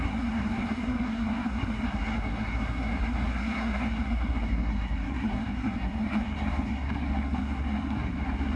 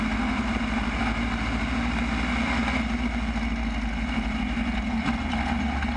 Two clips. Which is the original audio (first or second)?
second